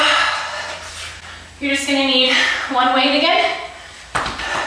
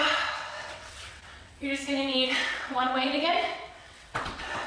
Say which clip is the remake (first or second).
second